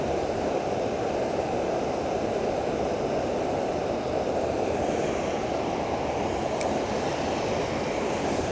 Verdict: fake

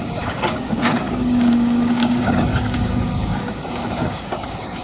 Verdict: fake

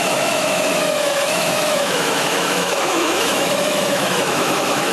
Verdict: fake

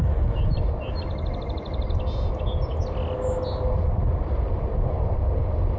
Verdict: real